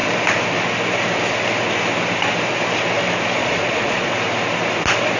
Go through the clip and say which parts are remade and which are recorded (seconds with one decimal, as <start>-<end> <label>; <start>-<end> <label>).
0.0-3.4 recorded; 3.4-4.1 remade; 4.1-5.2 recorded